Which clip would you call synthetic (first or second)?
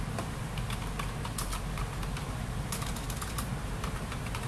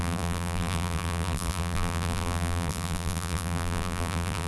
second